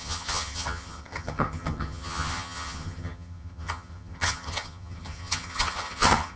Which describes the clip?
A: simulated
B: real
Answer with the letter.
A